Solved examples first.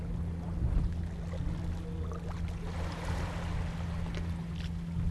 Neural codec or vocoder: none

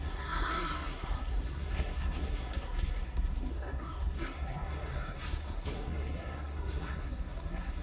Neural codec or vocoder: codec, SNAC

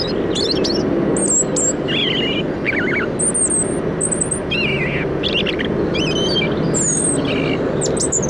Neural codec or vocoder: none